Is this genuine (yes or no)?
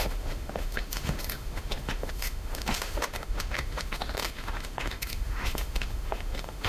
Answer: no